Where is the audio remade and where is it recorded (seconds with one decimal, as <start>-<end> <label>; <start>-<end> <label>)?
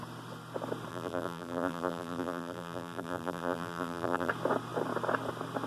0.0-0.9 recorded; 0.9-4.3 remade; 4.3-5.7 recorded